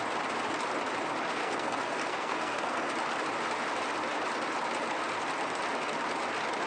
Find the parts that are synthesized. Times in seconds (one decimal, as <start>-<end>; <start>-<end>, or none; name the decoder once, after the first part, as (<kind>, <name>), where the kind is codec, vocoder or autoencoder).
1.4-2.9 (codec, SNAC)